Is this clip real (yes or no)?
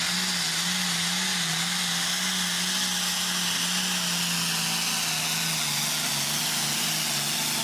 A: yes